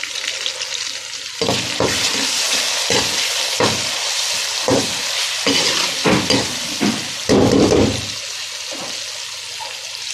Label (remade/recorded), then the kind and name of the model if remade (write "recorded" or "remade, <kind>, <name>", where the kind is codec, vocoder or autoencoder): recorded